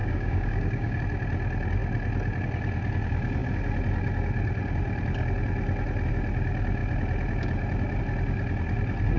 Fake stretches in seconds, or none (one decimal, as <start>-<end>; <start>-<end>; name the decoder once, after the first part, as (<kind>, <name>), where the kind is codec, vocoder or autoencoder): 0.0-1.0 (codec, DAC)